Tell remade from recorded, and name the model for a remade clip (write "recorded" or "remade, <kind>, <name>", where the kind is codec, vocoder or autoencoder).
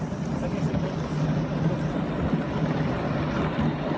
recorded